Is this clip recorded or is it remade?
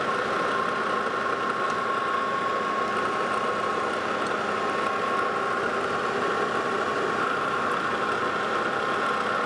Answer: recorded